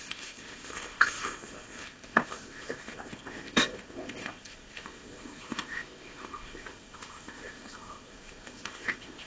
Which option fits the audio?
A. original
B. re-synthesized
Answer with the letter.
B